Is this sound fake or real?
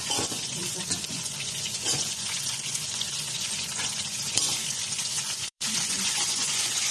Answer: fake